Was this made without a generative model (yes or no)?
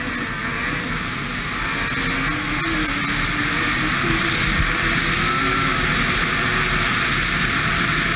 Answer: yes